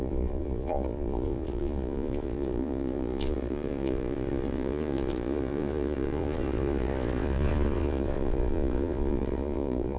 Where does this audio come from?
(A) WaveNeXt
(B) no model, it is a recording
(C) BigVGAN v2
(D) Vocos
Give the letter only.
D